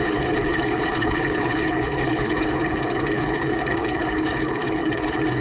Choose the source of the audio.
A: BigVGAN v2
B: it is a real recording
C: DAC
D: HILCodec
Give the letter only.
D